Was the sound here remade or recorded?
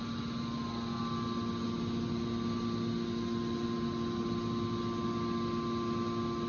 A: recorded